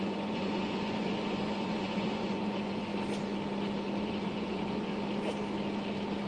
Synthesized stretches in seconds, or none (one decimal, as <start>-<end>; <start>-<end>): 0.0-2.9; 4.0-4.9